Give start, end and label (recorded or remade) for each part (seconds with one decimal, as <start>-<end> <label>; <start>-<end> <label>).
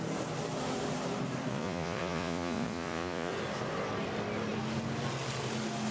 0.0-1.5 recorded; 1.5-3.3 remade; 3.3-5.9 recorded